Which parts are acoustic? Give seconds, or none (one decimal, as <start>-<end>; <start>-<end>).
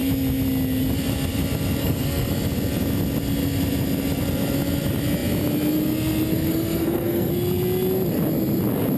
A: 0.0-1.8; 2.3-6.3; 7.3-9.0